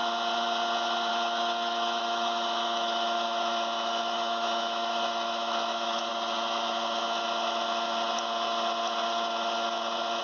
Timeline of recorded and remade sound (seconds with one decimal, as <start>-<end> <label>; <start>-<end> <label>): 0.0-1.1 recorded; 1.1-6.1 remade; 6.1-10.2 recorded